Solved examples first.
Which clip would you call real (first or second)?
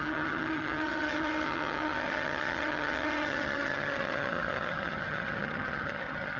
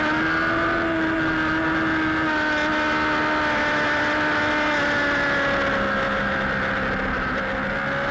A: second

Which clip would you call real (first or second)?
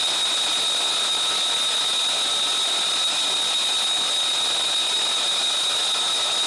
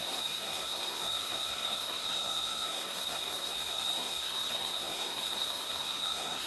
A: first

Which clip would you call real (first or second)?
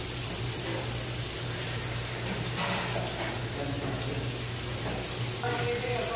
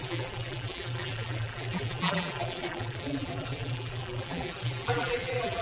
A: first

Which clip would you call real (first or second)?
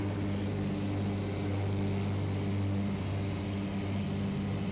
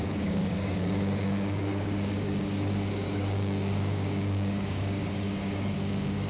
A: first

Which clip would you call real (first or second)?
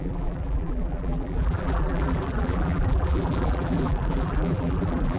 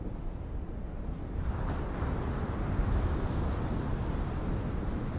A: second